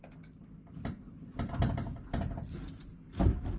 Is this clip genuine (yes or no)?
yes